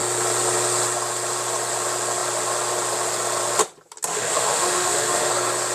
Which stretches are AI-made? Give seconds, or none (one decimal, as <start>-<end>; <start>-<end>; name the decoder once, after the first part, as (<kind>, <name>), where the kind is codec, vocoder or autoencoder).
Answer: 4.1-5.3 (autoencoder, DAC-VAE)

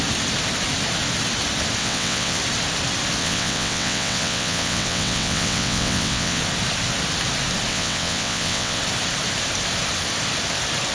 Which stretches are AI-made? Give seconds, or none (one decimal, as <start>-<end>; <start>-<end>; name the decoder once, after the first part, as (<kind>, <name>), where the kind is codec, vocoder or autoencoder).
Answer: 1.8-2.4 (vocoder, WaveNeXt); 3.2-6.4; 7.7-8.8